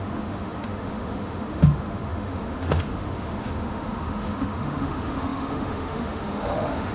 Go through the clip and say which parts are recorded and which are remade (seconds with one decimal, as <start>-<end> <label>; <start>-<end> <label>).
0.0-6.9 remade